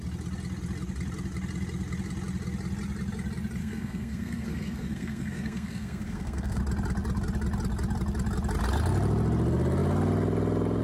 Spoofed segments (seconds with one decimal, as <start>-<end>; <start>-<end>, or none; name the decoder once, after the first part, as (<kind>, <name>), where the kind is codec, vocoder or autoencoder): 3.6-6.6 (codec, SNAC)